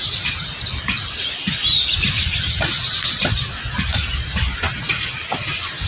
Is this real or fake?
real